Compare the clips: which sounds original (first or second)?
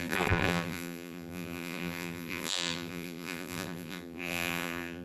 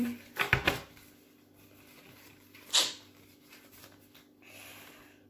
second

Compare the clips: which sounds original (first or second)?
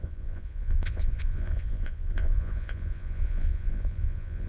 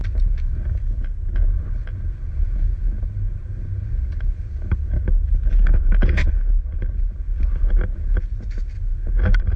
second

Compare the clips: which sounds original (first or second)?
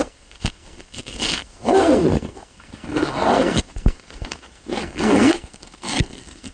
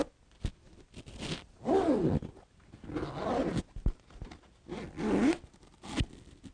second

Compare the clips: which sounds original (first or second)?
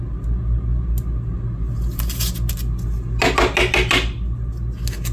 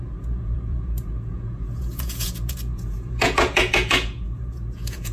first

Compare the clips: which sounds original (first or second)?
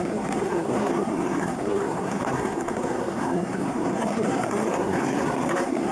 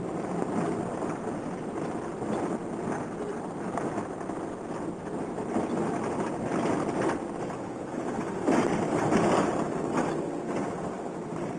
second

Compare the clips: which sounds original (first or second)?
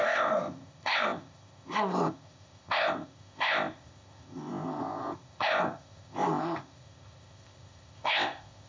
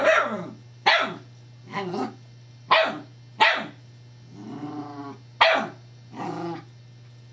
second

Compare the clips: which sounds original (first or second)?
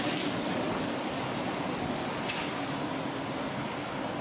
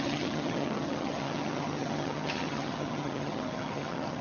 first